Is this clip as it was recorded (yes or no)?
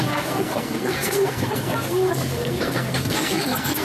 no